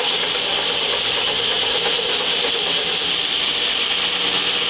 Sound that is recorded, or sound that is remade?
recorded